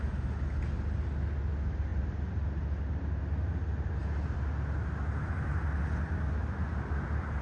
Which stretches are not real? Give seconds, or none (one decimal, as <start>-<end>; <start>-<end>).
none